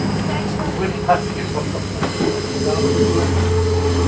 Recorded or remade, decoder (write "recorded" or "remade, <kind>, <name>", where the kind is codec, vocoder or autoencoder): recorded